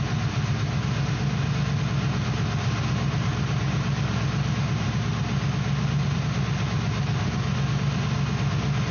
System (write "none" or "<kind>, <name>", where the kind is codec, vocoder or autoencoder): none